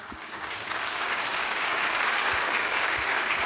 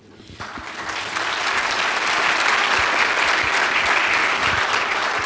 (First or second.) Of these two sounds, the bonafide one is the second